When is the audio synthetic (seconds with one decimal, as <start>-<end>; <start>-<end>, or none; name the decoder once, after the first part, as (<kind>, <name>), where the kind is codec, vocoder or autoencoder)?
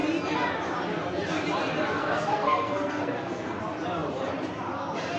2.0-3.6 (codec, SNAC)